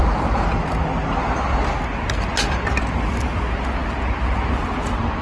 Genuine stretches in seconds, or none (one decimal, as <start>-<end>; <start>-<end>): 0.0-5.2